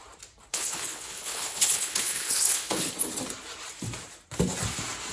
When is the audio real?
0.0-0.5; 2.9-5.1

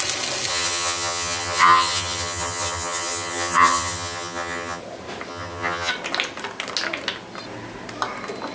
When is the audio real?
0.0-0.5; 4.8-5.3; 5.9-8.5

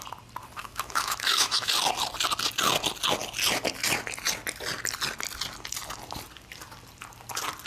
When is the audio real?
0.0-0.6; 1.7-7.7

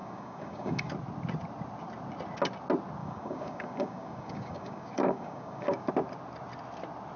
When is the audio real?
0.9-3.0; 5.9-7.2

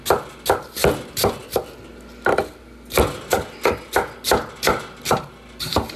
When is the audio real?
0.0-6.0